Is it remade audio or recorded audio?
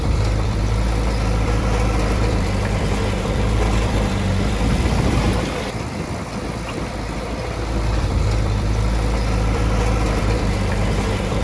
remade